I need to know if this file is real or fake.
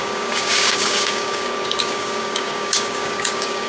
fake